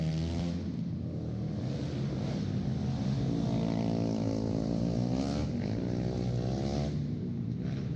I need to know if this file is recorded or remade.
recorded